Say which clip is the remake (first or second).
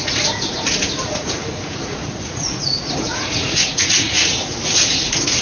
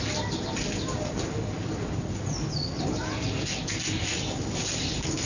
first